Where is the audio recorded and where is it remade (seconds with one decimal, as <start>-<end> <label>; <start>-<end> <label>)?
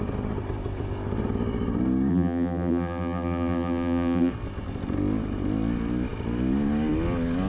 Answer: 0.0-2.1 recorded; 2.1-4.3 remade; 4.3-7.5 recorded